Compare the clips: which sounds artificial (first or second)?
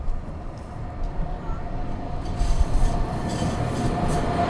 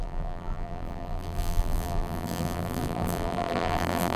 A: second